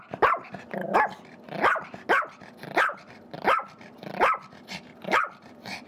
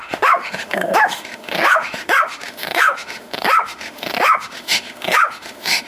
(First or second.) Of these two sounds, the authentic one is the first